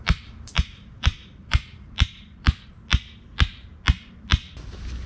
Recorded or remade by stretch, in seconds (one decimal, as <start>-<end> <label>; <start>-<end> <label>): 0.0-2.7 remade; 2.7-5.1 recorded